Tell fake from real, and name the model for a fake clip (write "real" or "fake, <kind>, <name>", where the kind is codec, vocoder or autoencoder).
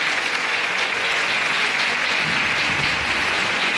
fake, vocoder, Vocos